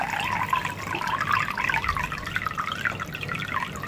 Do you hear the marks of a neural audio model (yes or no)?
no